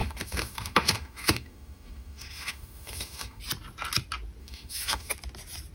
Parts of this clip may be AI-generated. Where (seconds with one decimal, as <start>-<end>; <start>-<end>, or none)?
0.0-3.4; 4.4-5.1